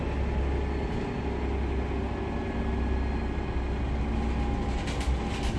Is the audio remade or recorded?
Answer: recorded